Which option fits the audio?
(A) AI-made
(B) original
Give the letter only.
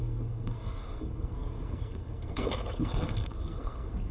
A